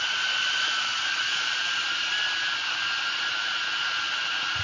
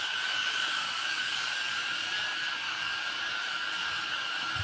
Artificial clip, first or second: second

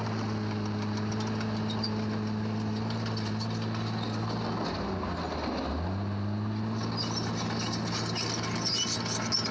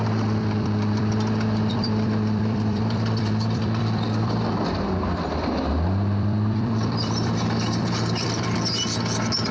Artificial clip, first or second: second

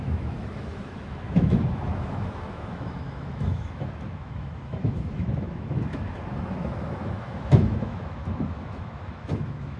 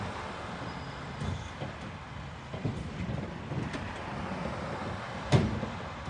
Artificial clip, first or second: first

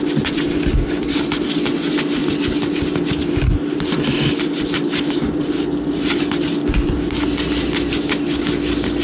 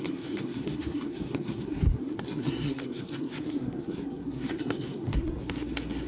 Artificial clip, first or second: second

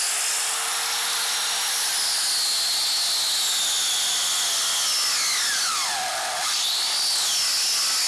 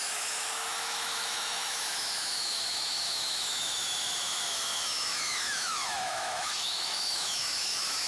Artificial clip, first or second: second